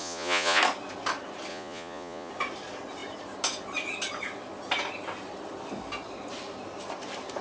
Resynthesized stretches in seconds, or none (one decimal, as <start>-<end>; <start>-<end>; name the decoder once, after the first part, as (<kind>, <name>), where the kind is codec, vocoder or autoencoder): 0.0-0.6 (vocoder, Vocos); 1.5-2.3

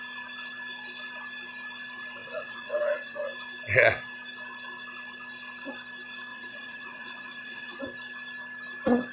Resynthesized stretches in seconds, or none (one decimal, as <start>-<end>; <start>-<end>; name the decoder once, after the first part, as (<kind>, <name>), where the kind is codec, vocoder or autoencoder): 2.2-3.3 (vocoder, Vocos); 6.3-7.8

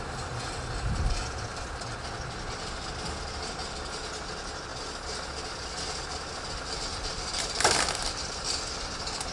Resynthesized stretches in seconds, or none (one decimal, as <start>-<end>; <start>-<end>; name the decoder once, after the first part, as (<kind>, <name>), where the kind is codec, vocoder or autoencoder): none

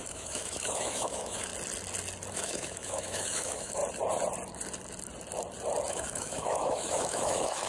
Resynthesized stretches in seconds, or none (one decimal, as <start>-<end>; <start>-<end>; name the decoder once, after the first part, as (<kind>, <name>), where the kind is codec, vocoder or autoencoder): 0.0-1.5 (autoencoder, DAC-VAE); 2.3-3.8; 5.9-7.7

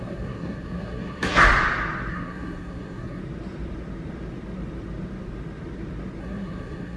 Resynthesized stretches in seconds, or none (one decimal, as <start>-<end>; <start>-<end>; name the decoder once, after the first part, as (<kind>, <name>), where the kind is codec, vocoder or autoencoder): 0.0-1.4 (codec, SNAC); 2.1-3.2; 6.2-7.0

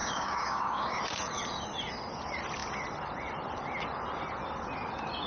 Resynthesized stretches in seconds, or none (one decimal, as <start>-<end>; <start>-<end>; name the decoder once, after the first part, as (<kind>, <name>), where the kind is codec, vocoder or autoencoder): 0.0-1.0 (codec, DAC)